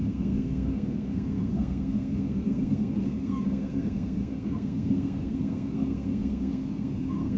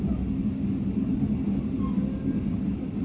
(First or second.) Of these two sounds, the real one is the second